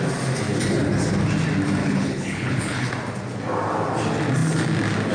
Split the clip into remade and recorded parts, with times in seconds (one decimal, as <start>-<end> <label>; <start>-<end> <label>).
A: 0.0-1.8 recorded; 1.8-2.9 remade; 2.9-5.1 recorded